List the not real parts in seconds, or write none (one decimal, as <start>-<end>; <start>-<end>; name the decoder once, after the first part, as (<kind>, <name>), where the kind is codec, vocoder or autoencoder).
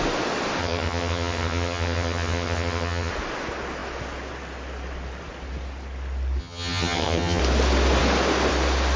0.6-3.1 (vocoder, HiFi-GAN); 6.4-7.4